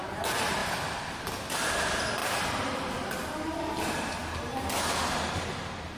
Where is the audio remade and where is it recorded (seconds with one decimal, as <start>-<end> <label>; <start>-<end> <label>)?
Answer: 0.0-6.0 recorded